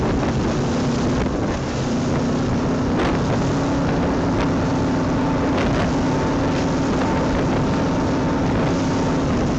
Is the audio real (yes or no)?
yes